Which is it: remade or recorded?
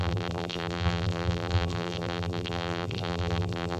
remade